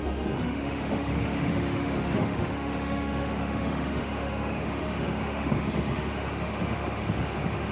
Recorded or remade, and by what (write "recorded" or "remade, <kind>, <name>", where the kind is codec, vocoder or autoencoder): remade, autoencoder, DAC-VAE